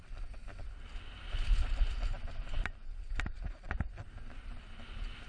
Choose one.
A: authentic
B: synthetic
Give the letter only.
A